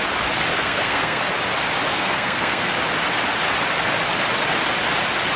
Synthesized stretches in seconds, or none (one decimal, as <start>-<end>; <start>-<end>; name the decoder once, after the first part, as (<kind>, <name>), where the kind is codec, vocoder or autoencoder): 0.5-1.2 (codec, SNAC); 1.9-2.8